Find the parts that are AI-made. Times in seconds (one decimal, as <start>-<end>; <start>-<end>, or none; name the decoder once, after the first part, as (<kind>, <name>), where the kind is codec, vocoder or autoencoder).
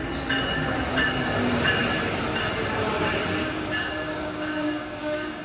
3.4-5.4 (codec, DAC)